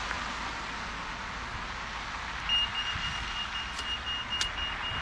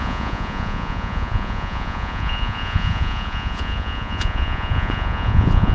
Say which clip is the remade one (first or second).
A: second